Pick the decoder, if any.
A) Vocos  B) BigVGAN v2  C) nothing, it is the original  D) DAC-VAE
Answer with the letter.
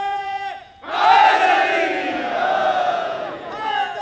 A